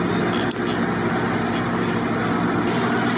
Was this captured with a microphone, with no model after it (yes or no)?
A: yes